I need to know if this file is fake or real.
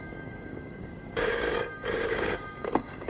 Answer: fake